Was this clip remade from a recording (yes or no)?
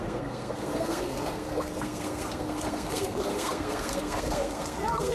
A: yes